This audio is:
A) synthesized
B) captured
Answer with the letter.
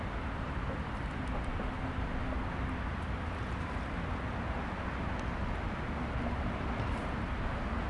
B